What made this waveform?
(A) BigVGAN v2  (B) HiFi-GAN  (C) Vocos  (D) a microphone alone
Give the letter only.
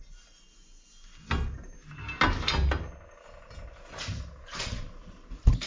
D